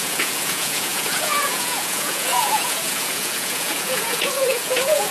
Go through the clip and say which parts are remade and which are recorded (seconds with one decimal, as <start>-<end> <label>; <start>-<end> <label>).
0.0-5.1 remade